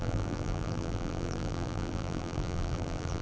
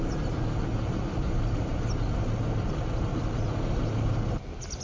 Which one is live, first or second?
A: second